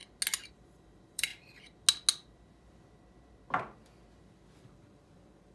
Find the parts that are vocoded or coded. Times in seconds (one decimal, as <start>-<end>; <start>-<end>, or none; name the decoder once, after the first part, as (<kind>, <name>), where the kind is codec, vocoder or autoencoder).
0.5-1.3 (vocoder, BigVGAN v2); 4.6-5.5